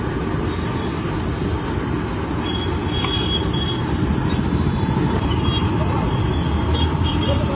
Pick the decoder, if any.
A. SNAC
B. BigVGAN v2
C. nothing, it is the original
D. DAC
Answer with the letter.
C